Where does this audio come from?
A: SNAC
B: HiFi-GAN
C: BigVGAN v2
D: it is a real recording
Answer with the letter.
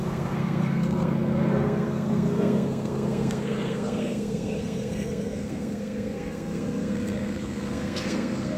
A